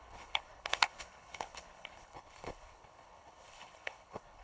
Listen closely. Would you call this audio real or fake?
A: fake